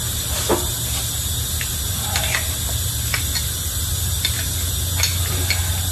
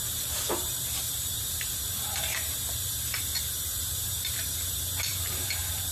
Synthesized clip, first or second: second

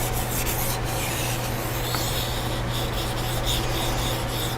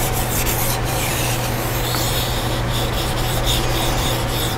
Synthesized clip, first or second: second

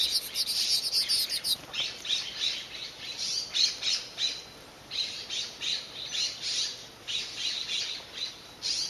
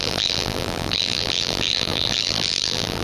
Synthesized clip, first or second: second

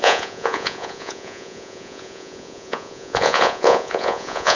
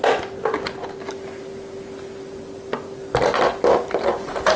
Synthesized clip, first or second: first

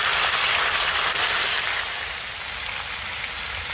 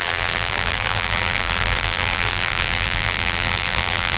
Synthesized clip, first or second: second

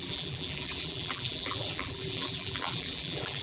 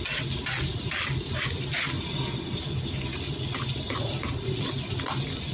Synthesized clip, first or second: first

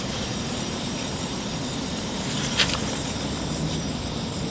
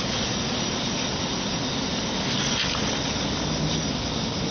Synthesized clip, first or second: first